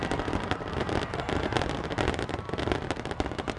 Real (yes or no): yes